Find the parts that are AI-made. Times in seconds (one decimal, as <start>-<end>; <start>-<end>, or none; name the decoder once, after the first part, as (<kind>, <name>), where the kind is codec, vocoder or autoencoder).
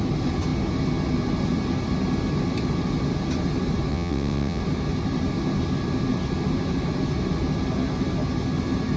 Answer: 3.9-4.6 (vocoder, WaveNeXt)